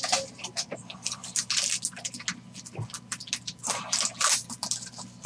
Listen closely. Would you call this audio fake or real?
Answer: real